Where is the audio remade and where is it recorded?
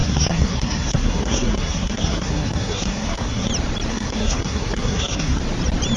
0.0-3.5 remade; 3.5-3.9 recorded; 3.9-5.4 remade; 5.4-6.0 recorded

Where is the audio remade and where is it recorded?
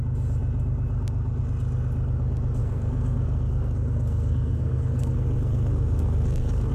0.0-2.6 recorded; 2.6-6.7 remade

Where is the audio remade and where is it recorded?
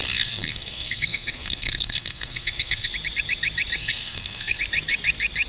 0.0-2.9 remade; 2.9-3.8 recorded; 3.8-4.6 remade; 4.6-5.5 recorded